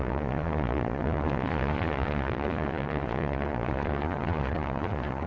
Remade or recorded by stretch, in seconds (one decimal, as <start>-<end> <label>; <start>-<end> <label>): 0.0-5.3 remade